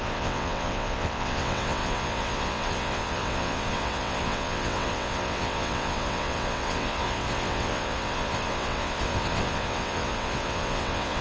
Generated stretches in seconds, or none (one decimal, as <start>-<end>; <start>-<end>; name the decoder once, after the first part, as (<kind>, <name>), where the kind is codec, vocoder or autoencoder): 0.0-11.2 (vocoder, WaveNeXt)